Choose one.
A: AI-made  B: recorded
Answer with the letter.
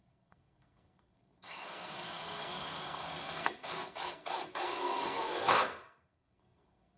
A